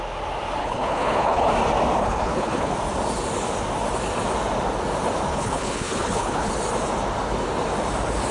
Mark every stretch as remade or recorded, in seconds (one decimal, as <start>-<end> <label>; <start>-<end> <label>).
0.0-0.6 recorded; 0.6-1.5 remade; 1.5-2.0 recorded; 2.0-2.7 remade; 2.7-5.3 recorded; 5.3-6.5 remade; 6.5-8.3 recorded